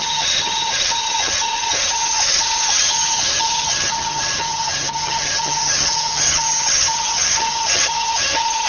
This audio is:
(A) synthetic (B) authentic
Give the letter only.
A